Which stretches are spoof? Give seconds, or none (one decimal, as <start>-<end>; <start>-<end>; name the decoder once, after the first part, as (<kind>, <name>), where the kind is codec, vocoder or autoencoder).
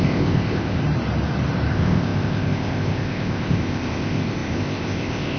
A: 0.0-0.8 (codec, ZipCodec); 1.7-5.4